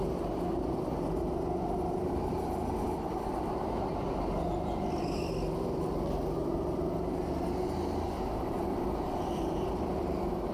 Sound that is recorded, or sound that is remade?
recorded